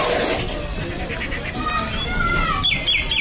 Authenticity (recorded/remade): recorded